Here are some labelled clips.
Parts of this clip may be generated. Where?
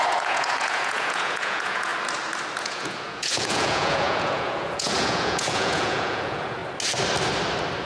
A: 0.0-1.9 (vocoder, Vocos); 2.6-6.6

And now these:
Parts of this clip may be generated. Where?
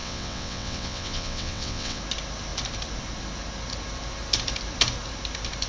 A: 0.0-2.0 (vocoder, WaveNeXt)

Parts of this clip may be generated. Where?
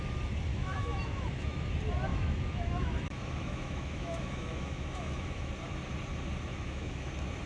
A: 0.5-1.7 (autoencoder, DAC-VAE); 2.1-5.5; 6.5-7.1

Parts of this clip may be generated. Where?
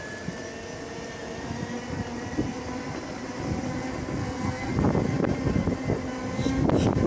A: 4.2-4.7 (codec, SNAC)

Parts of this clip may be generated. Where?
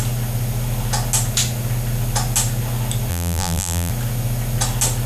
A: 3.1-3.9 (vocoder, BigVGAN v2)